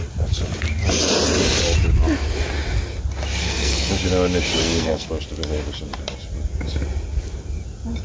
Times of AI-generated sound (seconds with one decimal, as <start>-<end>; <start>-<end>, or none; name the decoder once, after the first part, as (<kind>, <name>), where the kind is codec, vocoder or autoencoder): 3.4-3.9 (codec, SNAC); 4.6-5.1